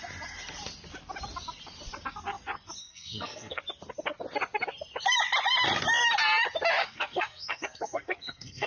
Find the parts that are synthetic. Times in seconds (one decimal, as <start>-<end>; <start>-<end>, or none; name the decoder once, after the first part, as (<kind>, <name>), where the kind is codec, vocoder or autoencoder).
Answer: 2.8-3.6 (codec, SNAC); 6.8-8.7